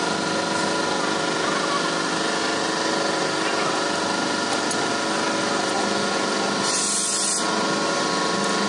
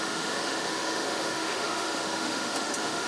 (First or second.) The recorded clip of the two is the first